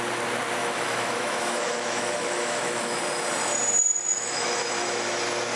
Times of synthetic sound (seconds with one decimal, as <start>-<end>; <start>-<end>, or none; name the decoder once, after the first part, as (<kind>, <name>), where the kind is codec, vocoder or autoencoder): 0.6-3.0 (autoencoder, DAC-VAE); 4.1-4.6